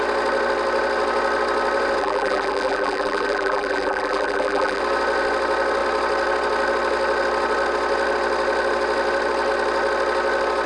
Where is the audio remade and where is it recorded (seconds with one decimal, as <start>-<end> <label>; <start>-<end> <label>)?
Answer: 0.0-2.0 recorded; 2.0-4.8 remade; 4.8-10.7 recorded